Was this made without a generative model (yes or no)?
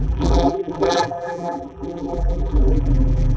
no